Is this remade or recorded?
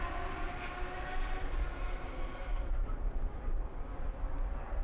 recorded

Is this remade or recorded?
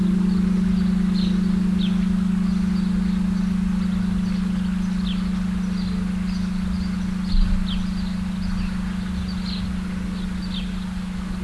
recorded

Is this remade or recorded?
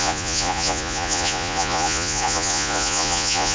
remade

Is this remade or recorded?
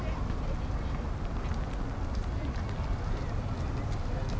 recorded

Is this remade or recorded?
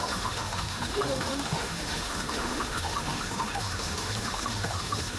remade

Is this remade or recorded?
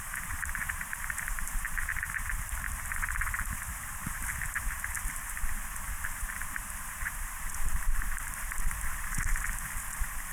remade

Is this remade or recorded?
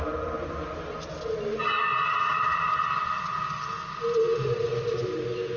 recorded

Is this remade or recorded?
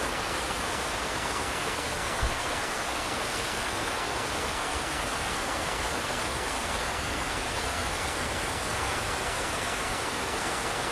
remade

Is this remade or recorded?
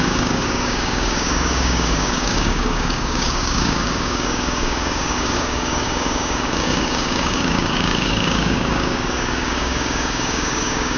remade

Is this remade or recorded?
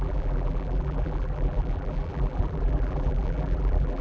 remade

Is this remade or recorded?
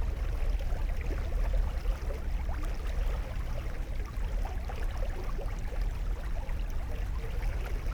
recorded